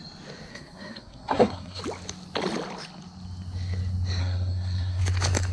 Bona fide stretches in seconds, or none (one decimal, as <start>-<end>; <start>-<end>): 0.0-0.5; 1.8-4.2; 5.0-5.5